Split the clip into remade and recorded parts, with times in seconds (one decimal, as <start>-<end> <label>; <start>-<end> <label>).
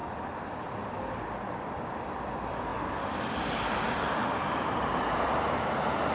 0.0-1.2 remade; 1.2-6.1 recorded